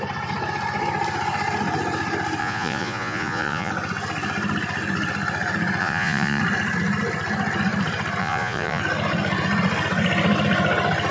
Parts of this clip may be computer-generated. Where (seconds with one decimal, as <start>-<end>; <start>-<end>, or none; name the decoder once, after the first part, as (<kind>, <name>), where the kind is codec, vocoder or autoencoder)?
2.4-3.7 (vocoder, Vocos); 5.8-6.4; 8.2-8.8